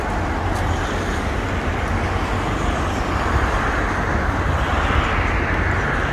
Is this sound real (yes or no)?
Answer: yes